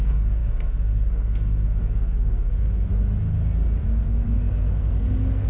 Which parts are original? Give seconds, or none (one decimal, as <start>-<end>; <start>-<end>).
2.9-3.8